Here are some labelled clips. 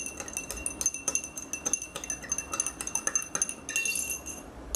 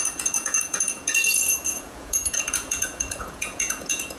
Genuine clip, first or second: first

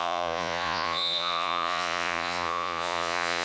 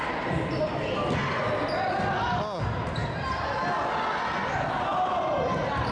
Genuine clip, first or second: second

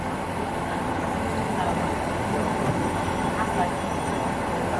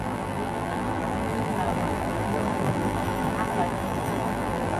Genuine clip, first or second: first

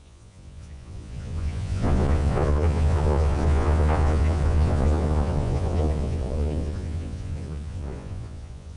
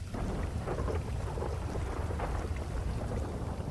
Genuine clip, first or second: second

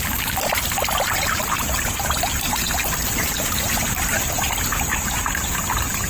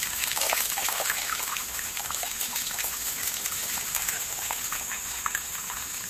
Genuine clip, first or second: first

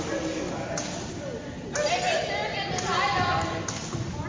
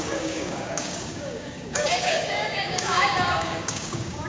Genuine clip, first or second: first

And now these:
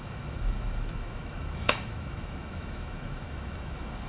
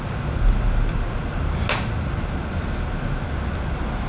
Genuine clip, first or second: second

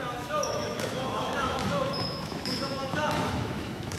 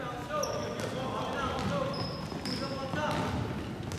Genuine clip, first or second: second